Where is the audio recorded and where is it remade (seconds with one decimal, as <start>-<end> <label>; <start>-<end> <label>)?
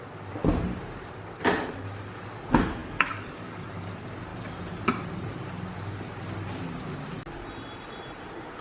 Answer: 0.0-2.8 recorded; 2.8-3.9 remade; 3.9-8.6 recorded